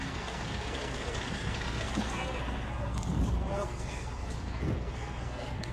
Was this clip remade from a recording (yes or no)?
yes